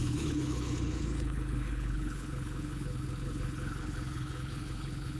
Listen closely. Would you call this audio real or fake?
fake